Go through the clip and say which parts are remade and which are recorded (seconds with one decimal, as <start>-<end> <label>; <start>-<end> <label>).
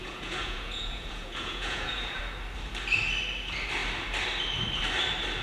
0.0-2.2 remade; 2.2-5.4 recorded